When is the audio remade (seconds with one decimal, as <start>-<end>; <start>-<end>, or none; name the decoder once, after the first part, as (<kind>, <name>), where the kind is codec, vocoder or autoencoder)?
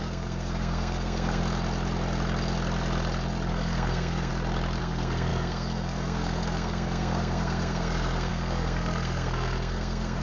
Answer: 0.0-1.4 (codec, SNAC); 3.5-4.3; 4.8-10.2